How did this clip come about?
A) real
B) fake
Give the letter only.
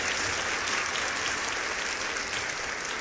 A